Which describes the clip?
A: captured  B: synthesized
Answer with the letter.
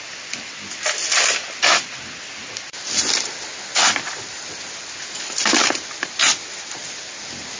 B